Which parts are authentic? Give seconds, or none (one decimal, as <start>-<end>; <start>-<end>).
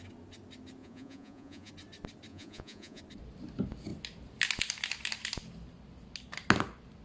0.0-0.8; 1.7-2.3; 3.0-7.0